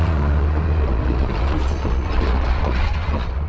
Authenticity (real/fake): fake